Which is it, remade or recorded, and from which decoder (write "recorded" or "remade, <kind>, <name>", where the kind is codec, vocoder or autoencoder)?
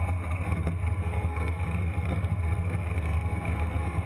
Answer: remade, codec, SNAC